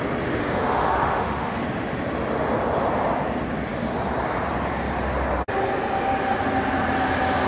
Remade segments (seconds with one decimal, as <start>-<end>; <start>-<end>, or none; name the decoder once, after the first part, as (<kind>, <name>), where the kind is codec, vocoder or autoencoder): 0.4-1.6 (autoencoder, DAC-VAE)